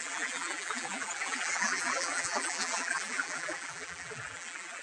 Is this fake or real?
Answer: fake